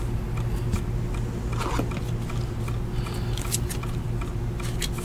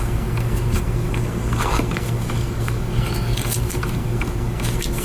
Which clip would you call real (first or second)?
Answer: first